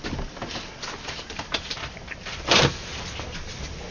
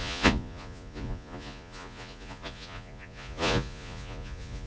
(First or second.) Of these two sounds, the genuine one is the first